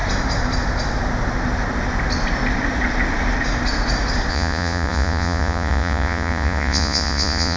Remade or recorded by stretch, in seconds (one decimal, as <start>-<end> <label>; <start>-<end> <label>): 0.0-4.3 recorded; 4.3-7.6 remade